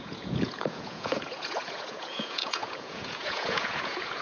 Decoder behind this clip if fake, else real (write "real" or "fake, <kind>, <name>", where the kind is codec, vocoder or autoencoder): fake, vocoder, Vocos